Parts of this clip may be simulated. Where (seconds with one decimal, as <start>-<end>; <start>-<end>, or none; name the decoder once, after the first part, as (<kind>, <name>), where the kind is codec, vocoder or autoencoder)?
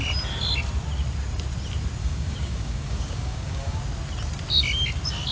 2.0-3.8 (codec, DAC)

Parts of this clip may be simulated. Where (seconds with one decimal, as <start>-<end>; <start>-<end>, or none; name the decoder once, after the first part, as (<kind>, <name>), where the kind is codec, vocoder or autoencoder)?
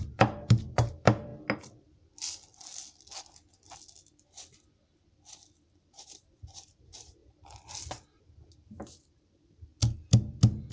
0.0-1.3 (vocoder, BigVGAN v2); 5.8-7.2; 8.2-9.7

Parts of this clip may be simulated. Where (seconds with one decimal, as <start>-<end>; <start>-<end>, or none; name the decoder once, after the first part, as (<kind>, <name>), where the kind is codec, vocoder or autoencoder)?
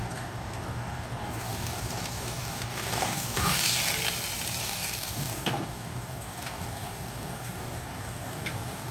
0.0-3.8 (codec, DAC); 4.6-8.9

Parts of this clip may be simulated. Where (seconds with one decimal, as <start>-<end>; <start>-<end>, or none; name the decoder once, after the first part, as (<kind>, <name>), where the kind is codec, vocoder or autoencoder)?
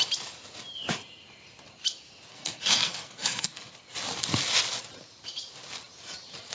2.3-3.7 (codec, SNAC)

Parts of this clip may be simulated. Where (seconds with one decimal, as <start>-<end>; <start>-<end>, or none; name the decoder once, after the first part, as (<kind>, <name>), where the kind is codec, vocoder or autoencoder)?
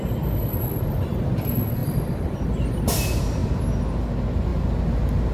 none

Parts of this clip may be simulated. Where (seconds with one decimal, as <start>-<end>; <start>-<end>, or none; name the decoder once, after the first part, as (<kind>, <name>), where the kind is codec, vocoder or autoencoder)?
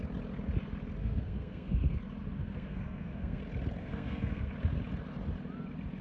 1.0-2.0 (codec, SNAC); 2.4-3.4; 3.8-4.5